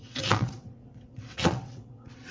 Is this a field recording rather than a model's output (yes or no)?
no